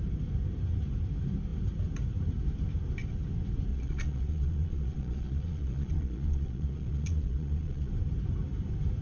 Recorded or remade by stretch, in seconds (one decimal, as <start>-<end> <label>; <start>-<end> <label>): 0.0-3.7 recorded; 3.7-7.9 remade; 7.9-9.0 recorded